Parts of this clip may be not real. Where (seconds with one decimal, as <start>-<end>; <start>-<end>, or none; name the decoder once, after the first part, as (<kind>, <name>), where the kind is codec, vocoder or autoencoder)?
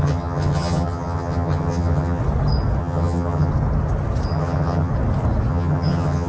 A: 0.0-2.2 (vocoder, HiFi-GAN); 2.8-3.5; 4.3-4.9; 5.5-6.3